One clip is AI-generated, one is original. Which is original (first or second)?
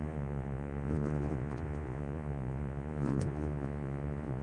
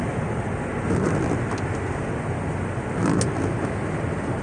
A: second